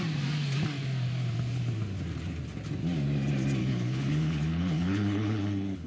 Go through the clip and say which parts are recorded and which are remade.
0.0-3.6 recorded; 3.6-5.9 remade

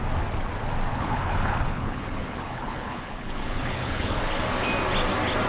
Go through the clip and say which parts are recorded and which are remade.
0.0-0.9 recorded; 0.9-4.2 remade; 4.2-5.5 recorded

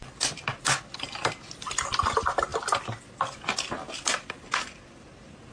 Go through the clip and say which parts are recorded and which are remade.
0.0-5.5 recorded

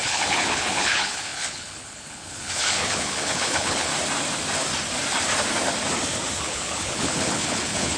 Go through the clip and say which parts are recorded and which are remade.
0.0-3.9 remade; 3.9-6.4 recorded; 6.4-8.0 remade

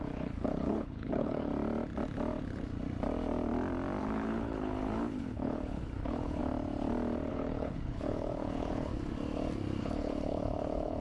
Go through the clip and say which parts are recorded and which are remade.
0.0-1.5 remade; 1.5-4.0 recorded; 4.0-6.4 remade; 6.4-7.3 recorded; 7.3-8.9 remade; 8.9-9.8 recorded; 9.8-11.0 remade